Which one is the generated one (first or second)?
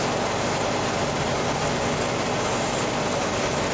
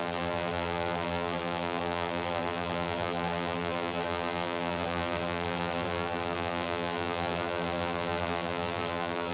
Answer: second